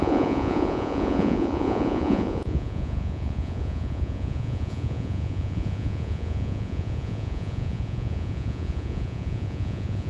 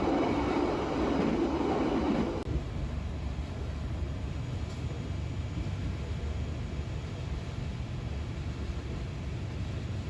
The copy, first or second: first